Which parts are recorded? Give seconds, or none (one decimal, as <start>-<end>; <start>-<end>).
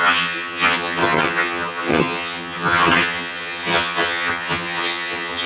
none